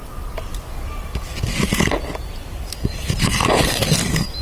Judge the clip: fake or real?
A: real